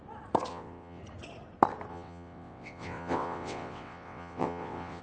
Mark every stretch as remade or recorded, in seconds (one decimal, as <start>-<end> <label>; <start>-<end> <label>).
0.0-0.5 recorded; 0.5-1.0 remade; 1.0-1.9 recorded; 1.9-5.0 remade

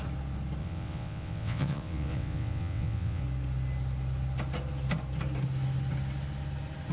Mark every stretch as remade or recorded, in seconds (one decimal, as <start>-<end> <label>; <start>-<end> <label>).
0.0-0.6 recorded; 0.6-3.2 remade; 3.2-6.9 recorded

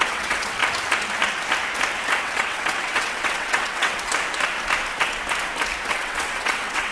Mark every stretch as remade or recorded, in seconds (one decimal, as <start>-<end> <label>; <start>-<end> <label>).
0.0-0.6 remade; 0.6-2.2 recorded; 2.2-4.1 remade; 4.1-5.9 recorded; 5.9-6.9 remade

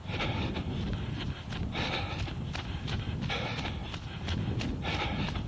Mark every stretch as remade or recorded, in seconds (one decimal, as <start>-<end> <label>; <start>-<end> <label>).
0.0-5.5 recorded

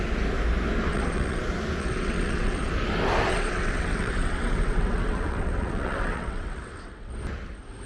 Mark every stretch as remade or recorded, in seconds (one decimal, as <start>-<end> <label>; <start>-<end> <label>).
0.0-0.9 recorded; 0.9-1.4 remade; 1.4-1.8 recorded; 1.8-2.7 remade; 2.7-3.3 recorded; 3.3-7.1 remade; 7.1-7.9 recorded